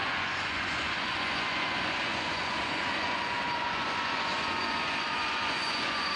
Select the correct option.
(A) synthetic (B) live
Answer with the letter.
A